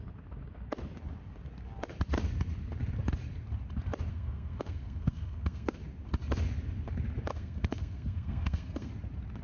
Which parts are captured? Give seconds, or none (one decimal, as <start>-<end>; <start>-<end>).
0.0-4.1; 5.8-7.3; 8.9-9.4